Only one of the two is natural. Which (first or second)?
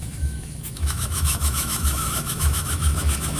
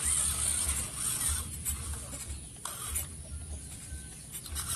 second